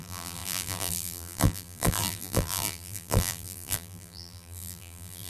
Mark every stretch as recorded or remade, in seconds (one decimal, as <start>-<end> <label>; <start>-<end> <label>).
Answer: 0.0-5.3 remade